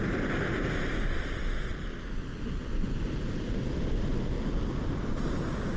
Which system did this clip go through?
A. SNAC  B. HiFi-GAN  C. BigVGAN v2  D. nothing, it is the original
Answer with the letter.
D